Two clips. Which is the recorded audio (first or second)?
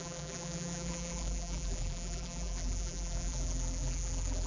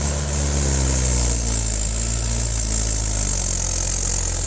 second